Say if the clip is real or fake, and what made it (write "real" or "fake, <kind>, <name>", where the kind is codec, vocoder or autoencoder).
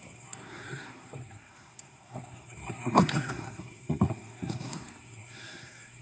fake, codec, SNAC